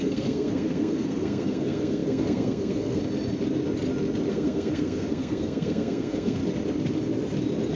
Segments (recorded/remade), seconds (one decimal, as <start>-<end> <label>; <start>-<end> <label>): 0.0-3.0 remade; 3.0-4.3 recorded; 4.3-6.4 remade; 6.4-7.8 recorded

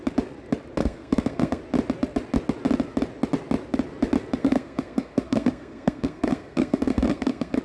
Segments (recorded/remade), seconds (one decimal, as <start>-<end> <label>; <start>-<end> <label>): 0.0-0.8 recorded; 0.8-1.6 remade; 1.6-4.4 recorded; 4.4-7.6 remade

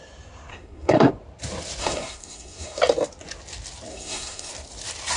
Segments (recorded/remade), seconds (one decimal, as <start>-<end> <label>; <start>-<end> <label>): 0.0-0.5 recorded; 0.5-1.1 remade; 1.1-1.8 recorded; 1.8-2.8 remade; 2.8-3.9 recorded; 3.9-4.5 remade; 4.5-5.2 recorded

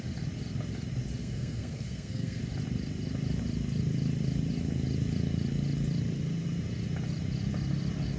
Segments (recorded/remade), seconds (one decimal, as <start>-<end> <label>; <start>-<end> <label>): 0.0-1.2 recorded; 1.2-2.4 remade; 2.4-8.2 recorded

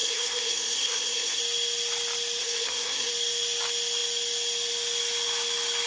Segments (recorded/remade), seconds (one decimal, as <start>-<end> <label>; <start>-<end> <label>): 0.0-1.4 remade; 1.4-2.4 recorded; 2.4-3.1 remade; 3.1-5.9 recorded